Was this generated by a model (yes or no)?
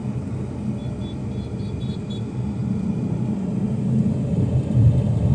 no